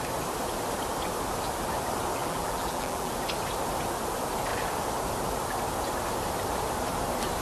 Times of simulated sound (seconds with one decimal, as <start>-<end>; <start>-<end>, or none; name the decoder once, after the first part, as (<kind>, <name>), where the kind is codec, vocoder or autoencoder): 2.2-3.1 (vocoder, BigVGAN v2)